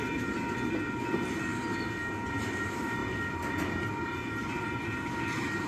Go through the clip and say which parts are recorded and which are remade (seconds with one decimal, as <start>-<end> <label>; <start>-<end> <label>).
0.0-1.5 remade; 1.5-2.3 recorded; 2.3-5.7 remade